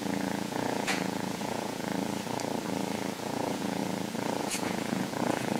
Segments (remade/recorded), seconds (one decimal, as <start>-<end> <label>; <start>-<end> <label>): 0.0-1.9 remade; 1.9-3.2 recorded; 3.2-3.8 remade; 3.8-4.4 recorded; 4.4-5.6 remade